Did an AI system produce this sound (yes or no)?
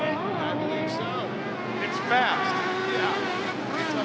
no